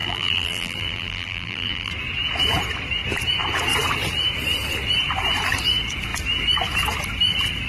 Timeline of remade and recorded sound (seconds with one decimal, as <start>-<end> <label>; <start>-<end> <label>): 0.0-1.9 remade; 1.9-7.7 recorded